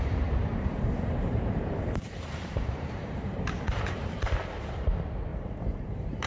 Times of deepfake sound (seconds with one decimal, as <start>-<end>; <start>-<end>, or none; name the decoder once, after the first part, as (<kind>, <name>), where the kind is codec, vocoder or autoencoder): 0.4-4.2 (vocoder, BigVGAN v2); 5.3-6.3